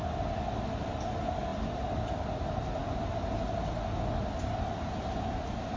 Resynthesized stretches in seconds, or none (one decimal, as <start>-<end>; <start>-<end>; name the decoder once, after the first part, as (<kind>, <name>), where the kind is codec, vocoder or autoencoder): none